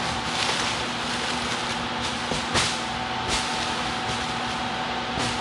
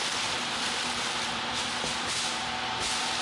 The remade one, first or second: second